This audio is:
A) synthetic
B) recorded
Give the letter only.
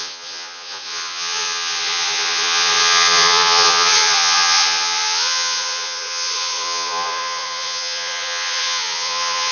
A